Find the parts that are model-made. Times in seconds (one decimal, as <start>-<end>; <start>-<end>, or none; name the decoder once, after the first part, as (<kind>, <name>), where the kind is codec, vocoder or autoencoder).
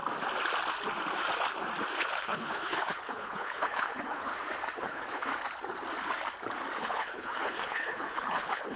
2.0-4.3 (codec, HILCodec); 4.8-5.3; 6.8-8.8